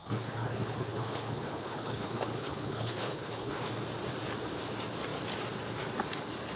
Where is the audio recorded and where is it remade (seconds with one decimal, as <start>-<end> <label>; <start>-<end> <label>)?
0.0-3.7 remade; 3.7-6.6 recorded